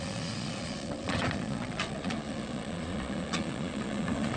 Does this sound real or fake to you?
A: fake